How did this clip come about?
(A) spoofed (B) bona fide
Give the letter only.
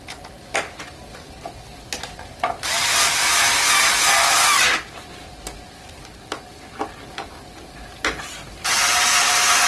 B